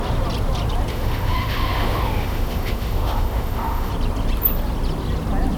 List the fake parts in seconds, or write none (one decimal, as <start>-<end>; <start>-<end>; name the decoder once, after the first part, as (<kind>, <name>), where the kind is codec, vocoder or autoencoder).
0.9-3.9 (autoencoder, DAC-VAE)